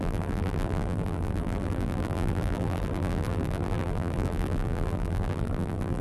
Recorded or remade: remade